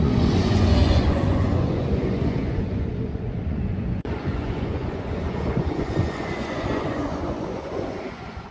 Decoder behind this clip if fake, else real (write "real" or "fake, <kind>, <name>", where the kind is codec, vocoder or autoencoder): fake, vocoder, Vocos